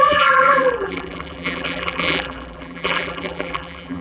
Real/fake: fake